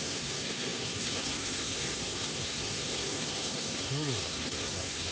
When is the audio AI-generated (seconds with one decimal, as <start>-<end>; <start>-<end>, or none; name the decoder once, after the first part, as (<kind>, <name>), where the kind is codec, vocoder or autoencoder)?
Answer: 0.0-5.1 (codec, SNAC)